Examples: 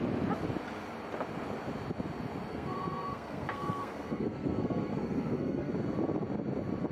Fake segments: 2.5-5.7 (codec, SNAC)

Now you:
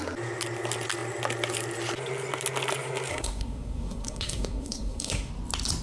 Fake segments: 3.1-5.3 (codec, SNAC)

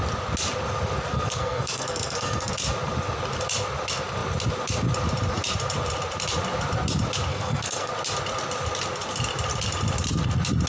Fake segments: 1.1-2.5 (codec, SNAC); 7.3-7.9

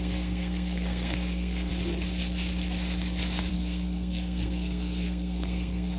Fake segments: 0.0-1.7 (codec, SNAC); 3.5-6.0